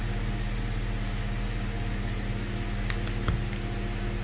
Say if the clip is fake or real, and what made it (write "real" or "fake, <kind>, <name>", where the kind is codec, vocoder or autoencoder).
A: real